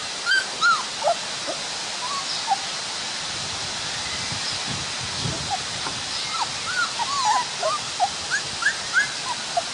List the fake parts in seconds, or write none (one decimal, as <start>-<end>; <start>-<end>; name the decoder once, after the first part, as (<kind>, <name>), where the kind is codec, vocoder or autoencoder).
none